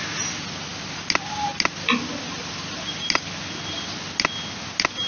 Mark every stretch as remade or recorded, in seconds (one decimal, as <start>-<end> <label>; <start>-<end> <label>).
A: 0.0-5.1 recorded